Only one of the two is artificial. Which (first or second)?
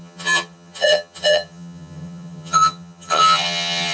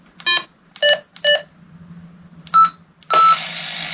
first